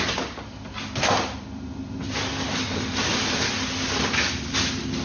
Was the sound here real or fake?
real